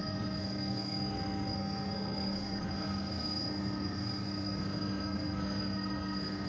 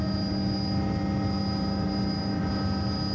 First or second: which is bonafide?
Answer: second